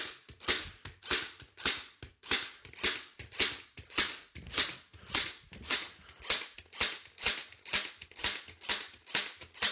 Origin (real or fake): real